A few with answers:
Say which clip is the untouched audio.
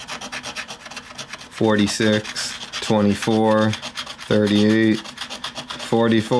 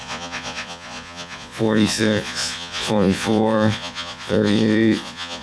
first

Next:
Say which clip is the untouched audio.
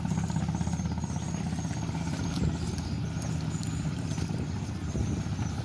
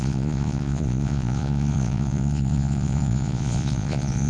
first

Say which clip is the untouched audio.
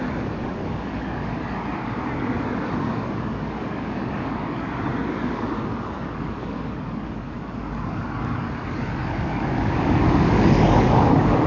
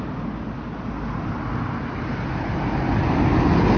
second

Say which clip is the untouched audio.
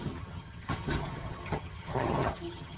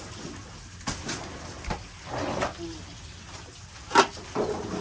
second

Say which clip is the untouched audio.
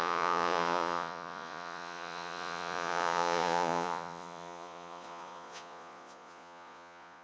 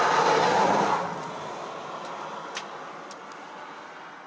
second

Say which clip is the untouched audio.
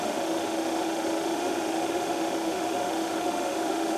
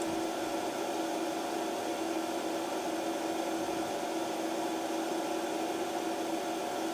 second